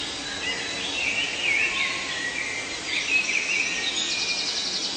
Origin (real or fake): real